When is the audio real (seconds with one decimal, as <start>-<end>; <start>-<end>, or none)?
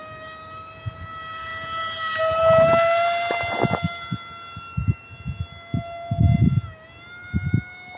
0.0-8.0